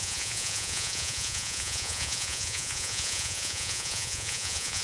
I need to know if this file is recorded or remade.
remade